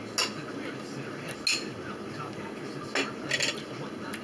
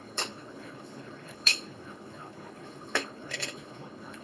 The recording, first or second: first